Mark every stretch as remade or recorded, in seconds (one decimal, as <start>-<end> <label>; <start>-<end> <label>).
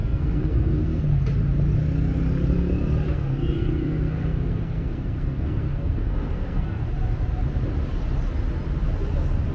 0.0-1.0 remade; 1.0-3.1 recorded; 3.1-6.8 remade; 6.8-9.5 recorded